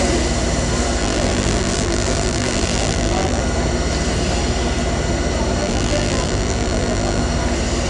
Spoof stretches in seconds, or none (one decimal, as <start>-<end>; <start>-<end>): 1.0-3.4; 5.6-7.2